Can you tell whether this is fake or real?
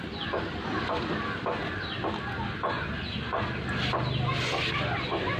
real